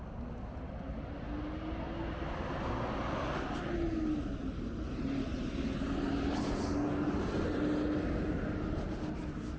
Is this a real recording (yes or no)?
yes